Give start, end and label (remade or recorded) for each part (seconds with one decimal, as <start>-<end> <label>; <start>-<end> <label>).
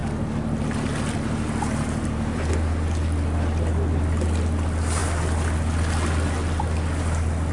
0.0-7.5 recorded